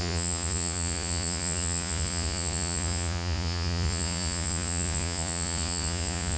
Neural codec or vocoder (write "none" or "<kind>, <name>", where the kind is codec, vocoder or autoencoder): vocoder, Vocos